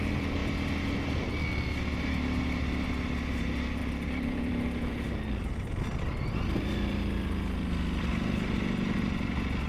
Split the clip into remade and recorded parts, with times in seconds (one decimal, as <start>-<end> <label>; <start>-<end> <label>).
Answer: 0.0-3.8 recorded; 3.8-4.5 remade; 4.5-9.7 recorded

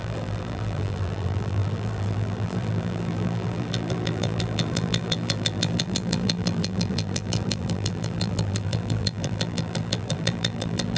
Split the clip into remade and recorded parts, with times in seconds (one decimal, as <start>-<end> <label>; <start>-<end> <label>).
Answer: 0.0-11.0 remade

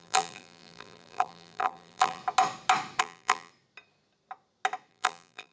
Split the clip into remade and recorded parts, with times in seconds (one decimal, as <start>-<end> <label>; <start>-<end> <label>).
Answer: 0.0-2.2 remade; 2.2-3.0 recorded; 3.0-3.5 remade; 3.5-4.9 recorded; 4.9-5.5 remade

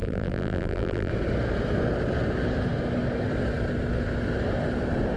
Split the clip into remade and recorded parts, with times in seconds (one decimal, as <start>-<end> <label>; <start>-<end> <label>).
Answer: 0.0-1.1 remade; 1.1-5.2 recorded